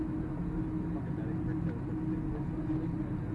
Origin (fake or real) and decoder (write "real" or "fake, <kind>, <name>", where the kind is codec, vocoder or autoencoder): real